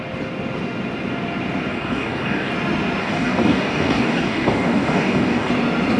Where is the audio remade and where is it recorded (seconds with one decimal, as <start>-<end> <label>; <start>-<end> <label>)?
0.0-1.7 recorded; 1.7-2.5 remade; 2.5-3.0 recorded; 3.0-5.5 remade; 5.5-6.0 recorded